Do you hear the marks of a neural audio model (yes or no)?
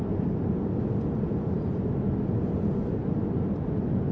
no